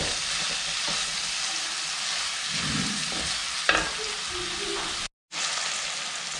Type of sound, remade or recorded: recorded